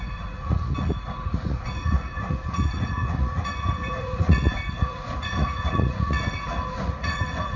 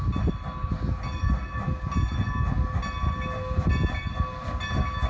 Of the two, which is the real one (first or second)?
second